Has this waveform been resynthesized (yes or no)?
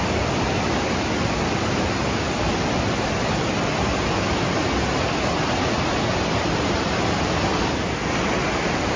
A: no